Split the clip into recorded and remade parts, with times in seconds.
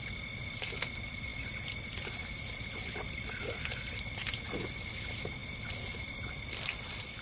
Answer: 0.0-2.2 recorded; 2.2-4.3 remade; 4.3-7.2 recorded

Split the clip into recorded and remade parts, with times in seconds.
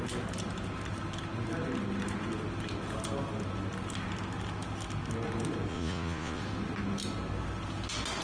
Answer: 0.0-5.7 recorded; 5.7-6.4 remade; 6.4-8.2 recorded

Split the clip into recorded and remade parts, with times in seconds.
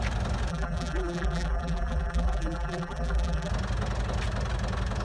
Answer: 0.0-0.5 recorded; 0.5-3.5 remade; 3.5-5.0 recorded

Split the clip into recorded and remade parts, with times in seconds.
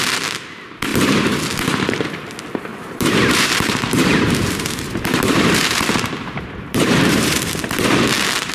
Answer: 0.0-0.9 recorded; 0.9-1.4 remade; 1.4-2.7 recorded; 2.7-7.5 remade; 7.5-8.5 recorded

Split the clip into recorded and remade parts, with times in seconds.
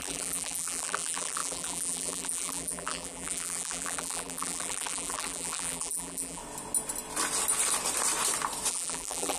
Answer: 0.0-6.4 remade; 6.4-8.7 recorded; 8.7-9.4 remade